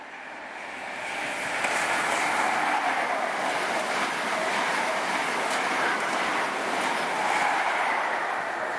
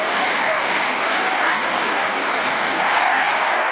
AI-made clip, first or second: second